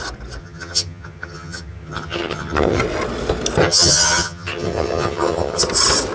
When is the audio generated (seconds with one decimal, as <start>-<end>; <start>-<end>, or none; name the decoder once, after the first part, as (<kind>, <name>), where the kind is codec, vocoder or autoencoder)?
0.4-2.8 (vocoder, HiFi-GAN); 3.6-5.6